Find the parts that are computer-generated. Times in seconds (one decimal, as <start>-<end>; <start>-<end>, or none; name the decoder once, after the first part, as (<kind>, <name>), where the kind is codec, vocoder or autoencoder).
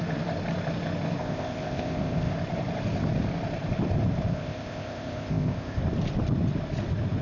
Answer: 1.2-2.3 (codec, ZipCodec); 4.3-5.8